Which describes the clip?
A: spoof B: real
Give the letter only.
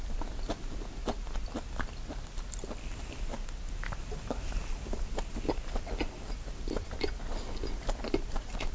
B